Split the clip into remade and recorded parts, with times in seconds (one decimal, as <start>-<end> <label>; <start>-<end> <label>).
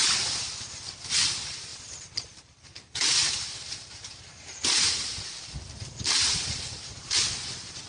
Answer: 0.0-1.7 recorded; 1.7-5.3 remade; 5.3-5.8 recorded; 5.8-7.1 remade; 7.1-7.9 recorded